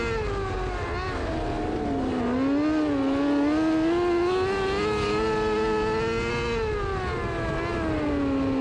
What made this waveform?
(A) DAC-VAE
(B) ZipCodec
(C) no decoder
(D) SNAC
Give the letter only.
C